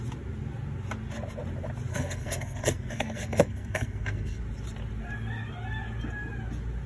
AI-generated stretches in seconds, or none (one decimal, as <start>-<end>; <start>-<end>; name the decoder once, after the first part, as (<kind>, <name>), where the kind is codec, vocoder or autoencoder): 1.9-4.4 (codec, SNAC)